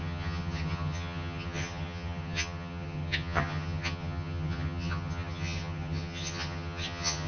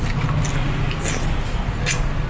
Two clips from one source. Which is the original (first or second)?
second